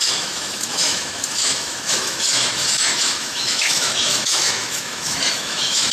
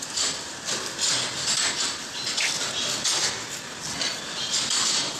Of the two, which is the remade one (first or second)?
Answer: first